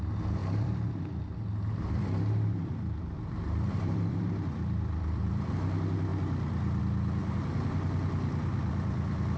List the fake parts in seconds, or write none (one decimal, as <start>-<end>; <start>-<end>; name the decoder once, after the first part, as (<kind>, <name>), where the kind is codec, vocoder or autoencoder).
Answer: 0.4-5.5 (vocoder, BigVGAN v2); 7.2-9.4